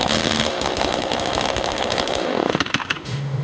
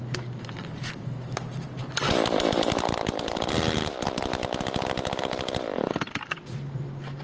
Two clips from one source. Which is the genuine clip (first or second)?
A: second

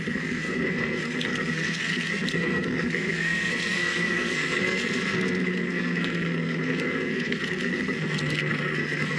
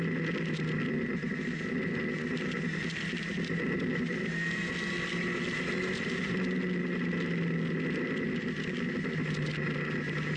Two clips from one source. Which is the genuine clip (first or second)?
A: second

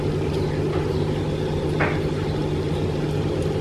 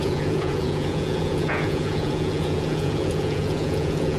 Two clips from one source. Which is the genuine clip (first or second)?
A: first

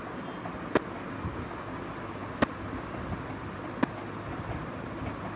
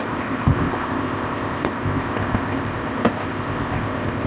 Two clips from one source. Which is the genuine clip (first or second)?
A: first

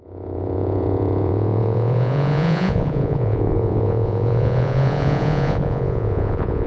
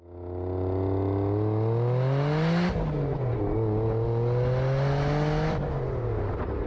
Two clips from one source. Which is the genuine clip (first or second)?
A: second